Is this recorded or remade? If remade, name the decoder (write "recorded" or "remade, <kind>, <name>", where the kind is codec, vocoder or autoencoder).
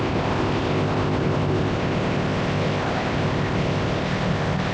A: remade, codec, ZipCodec